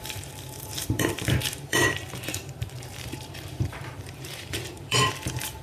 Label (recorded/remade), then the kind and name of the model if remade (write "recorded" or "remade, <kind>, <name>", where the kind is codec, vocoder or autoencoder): remade, vocoder, BigVGAN v2